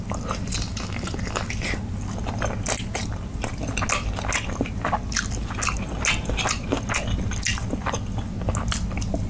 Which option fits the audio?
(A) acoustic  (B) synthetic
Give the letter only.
A